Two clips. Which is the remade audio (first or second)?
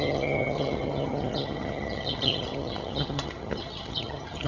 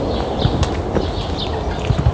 first